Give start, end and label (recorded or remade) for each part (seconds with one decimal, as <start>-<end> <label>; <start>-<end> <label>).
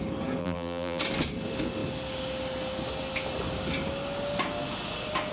0.0-0.4 recorded; 0.4-1.0 remade; 1.0-5.3 recorded